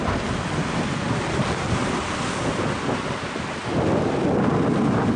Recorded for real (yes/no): yes